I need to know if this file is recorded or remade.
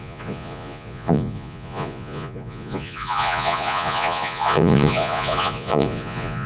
remade